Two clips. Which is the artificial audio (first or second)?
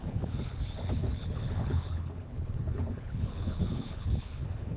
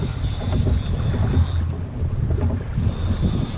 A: first